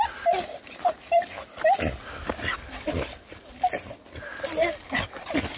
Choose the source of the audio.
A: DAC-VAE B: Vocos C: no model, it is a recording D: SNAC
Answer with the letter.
C